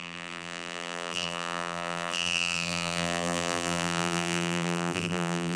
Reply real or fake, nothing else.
fake